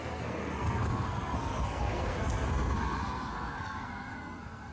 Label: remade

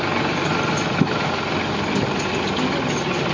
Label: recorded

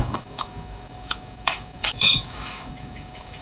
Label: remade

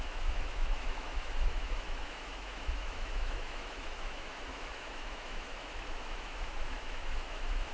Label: remade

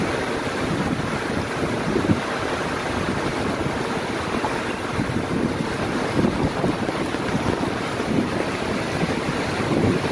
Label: recorded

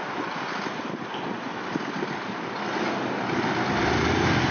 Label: recorded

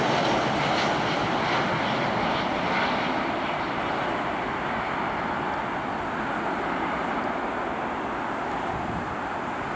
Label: recorded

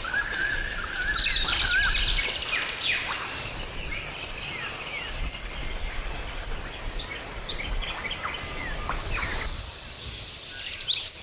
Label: recorded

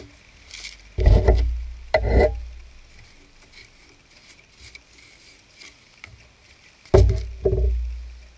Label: recorded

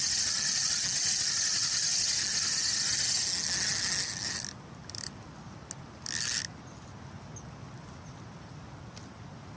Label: recorded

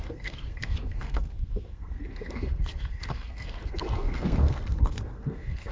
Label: remade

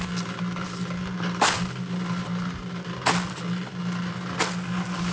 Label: recorded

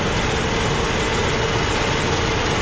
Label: recorded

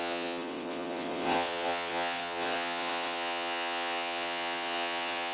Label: remade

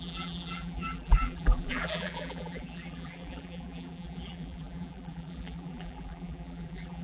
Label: remade